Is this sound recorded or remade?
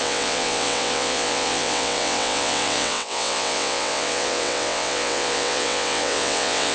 remade